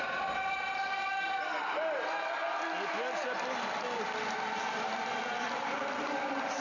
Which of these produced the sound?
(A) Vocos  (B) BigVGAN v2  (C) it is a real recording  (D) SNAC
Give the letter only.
C